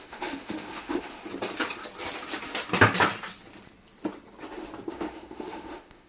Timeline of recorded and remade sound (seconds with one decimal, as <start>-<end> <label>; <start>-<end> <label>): 0.0-1.2 remade; 1.2-4.9 recorded; 4.9-6.1 remade